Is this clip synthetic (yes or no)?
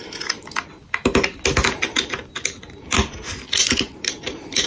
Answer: no